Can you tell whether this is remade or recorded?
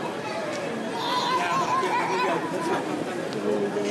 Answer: recorded